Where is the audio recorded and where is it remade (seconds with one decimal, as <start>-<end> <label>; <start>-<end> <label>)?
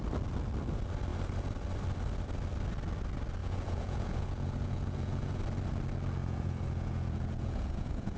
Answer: 0.0-3.4 recorded; 3.4-5.4 remade; 5.4-6.2 recorded; 6.2-8.2 remade